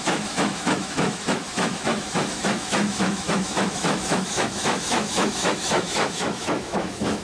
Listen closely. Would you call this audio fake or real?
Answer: fake